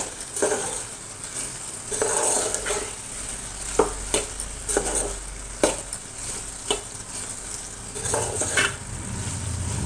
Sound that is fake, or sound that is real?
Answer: real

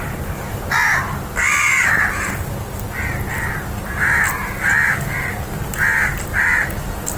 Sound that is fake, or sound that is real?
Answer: real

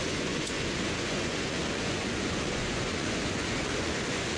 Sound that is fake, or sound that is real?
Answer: fake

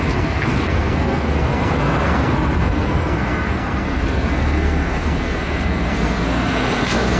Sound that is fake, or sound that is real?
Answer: fake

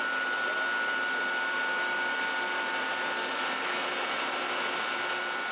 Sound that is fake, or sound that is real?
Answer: real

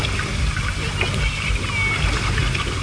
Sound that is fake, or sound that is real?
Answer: real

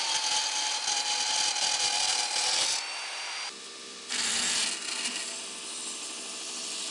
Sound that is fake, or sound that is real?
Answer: real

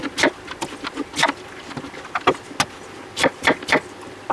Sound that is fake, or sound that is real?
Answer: real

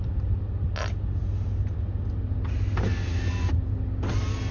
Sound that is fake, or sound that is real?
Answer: real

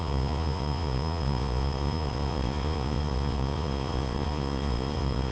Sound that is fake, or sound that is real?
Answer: fake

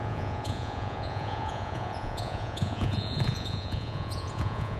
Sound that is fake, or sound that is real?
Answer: fake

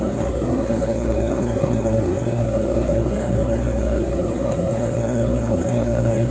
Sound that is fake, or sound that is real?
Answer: fake